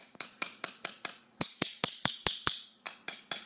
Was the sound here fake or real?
fake